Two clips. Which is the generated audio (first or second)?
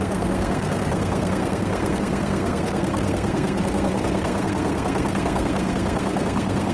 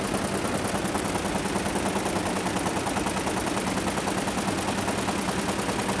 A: first